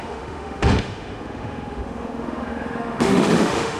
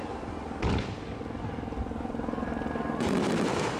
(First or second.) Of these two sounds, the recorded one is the second